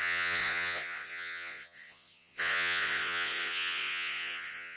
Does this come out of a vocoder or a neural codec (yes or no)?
yes